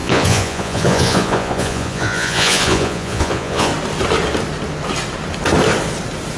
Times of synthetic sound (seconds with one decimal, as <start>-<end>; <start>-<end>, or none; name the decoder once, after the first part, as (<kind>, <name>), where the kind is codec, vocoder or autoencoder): 0.0-3.7 (vocoder, Vocos)